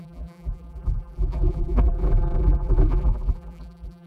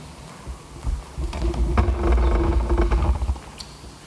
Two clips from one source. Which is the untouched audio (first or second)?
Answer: second